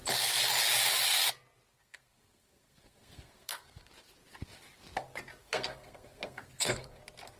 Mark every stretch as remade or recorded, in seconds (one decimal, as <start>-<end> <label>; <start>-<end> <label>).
0.0-1.7 recorded; 1.7-3.9 remade; 3.9-5.4 recorded; 5.4-7.0 remade; 7.0-7.4 recorded